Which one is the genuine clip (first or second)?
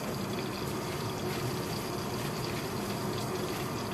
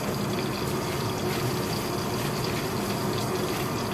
second